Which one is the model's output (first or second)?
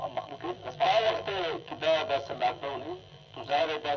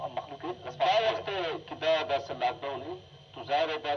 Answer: first